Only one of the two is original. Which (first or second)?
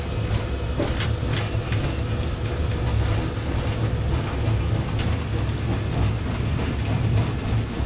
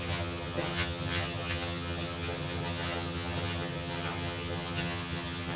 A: first